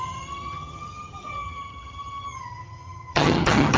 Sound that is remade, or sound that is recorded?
remade